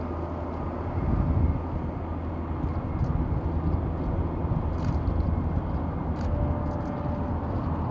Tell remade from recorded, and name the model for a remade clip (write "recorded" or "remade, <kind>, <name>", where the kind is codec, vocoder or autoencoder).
recorded